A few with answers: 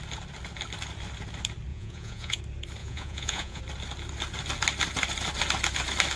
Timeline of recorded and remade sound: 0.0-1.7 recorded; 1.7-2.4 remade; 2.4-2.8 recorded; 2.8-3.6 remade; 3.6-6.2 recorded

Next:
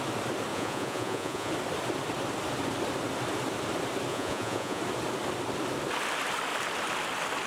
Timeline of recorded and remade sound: 0.0-0.5 recorded; 0.5-1.5 remade; 1.5-4.1 recorded; 4.1-4.8 remade; 4.8-7.5 recorded

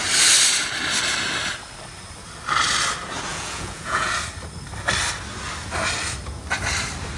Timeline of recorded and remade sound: 0.0-3.3 recorded; 3.3-4.1 remade; 4.1-7.2 recorded

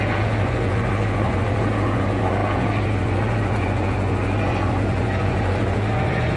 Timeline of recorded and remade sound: 0.0-6.4 remade